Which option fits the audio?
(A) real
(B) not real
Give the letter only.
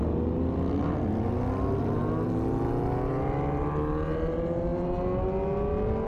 A